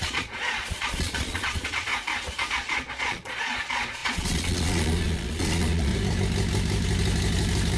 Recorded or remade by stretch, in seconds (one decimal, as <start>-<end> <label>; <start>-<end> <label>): 0.0-1.9 remade; 1.9-2.5 recorded; 2.5-5.9 remade; 5.9-7.8 recorded